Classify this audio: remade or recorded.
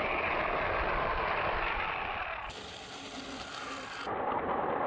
recorded